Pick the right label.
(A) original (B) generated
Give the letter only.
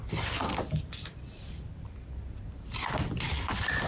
A